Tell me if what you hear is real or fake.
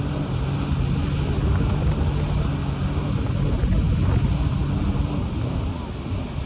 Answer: real